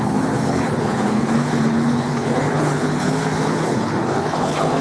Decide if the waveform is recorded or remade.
remade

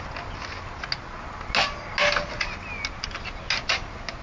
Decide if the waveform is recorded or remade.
recorded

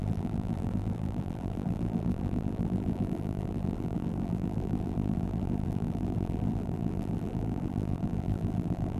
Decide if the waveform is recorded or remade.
remade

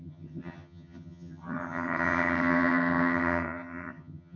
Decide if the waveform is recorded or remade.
remade